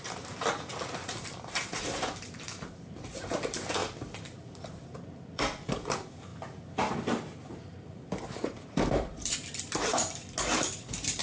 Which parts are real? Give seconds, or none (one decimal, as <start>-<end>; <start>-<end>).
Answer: 0.7-1.3; 6.3-7.7; 10.2-11.2

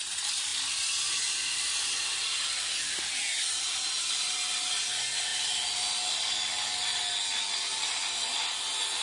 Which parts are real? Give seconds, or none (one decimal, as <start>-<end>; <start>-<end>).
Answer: 0.0-0.5; 4.0-9.0

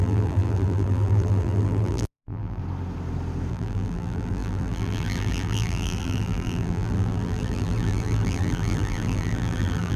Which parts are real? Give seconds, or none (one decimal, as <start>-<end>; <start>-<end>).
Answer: 2.6-3.5

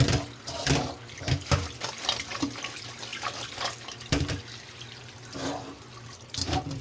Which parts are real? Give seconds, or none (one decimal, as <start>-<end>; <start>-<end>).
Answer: 0.0-3.1; 4.4-6.8

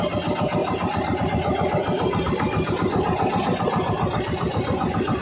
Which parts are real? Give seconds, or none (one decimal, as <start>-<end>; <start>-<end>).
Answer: 0.0-0.6; 1.2-5.2

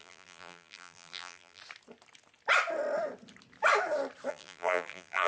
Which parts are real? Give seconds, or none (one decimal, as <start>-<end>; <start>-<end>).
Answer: 1.6-4.3